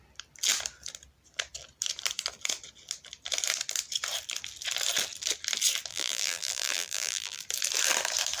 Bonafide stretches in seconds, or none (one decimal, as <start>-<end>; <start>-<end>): 0.0-5.9; 7.4-8.4